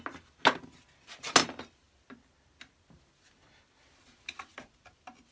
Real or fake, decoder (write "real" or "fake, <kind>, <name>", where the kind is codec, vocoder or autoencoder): real